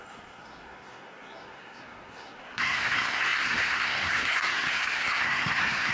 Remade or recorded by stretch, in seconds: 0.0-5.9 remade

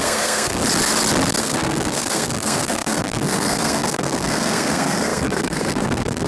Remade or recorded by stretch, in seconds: 0.0-0.6 remade; 0.6-1.4 recorded; 1.4-6.3 remade

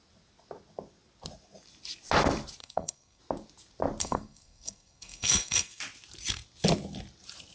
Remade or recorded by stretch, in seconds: 0.0-2.6 recorded; 2.6-3.2 remade; 3.2-4.0 recorded; 4.0-5.8 remade; 5.8-7.5 recorded

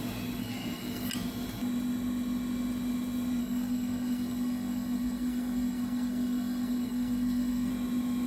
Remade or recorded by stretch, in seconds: 0.0-0.4 recorded; 0.4-1.1 remade; 1.1-3.4 recorded; 3.4-7.7 remade; 7.7-8.3 recorded